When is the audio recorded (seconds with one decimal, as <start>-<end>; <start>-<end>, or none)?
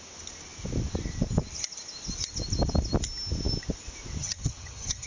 0.0-4.2